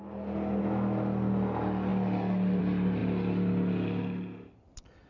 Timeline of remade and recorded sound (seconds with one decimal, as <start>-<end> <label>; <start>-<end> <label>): 0.0-5.1 recorded